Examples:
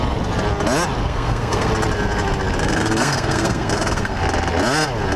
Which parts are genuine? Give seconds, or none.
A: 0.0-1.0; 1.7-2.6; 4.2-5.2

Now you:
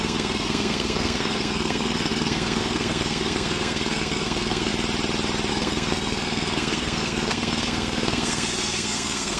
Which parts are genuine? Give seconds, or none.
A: 4.7-5.5

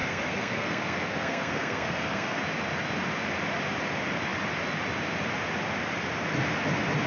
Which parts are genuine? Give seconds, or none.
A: 2.4-7.1